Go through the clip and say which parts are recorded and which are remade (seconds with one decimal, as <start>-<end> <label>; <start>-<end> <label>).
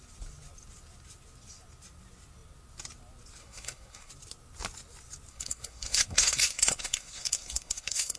0.0-3.4 recorded; 3.4-4.1 remade; 4.1-5.3 recorded; 5.3-8.2 remade